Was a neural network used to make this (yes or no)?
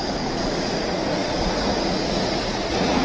yes